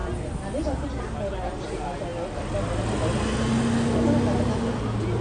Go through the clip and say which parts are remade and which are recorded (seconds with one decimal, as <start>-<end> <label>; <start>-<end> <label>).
0.0-5.2 recorded